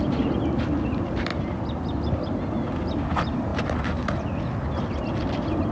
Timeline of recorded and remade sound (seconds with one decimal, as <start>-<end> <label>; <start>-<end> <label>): 0.0-3.5 remade; 3.5-5.7 recorded